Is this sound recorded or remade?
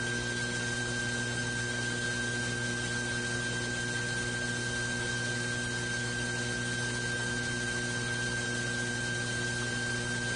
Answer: recorded